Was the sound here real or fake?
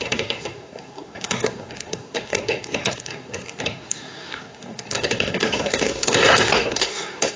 fake